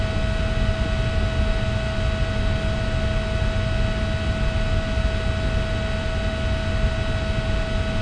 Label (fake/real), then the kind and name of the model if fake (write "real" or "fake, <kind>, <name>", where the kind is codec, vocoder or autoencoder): real